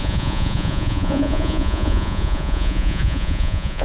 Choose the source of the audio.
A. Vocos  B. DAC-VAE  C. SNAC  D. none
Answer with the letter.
A